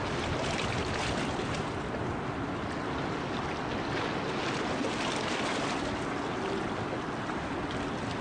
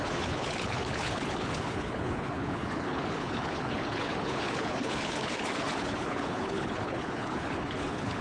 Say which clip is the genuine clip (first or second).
first